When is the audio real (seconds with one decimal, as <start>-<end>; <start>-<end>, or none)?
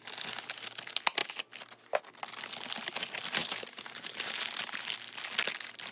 0.0-3.4; 4.8-5.9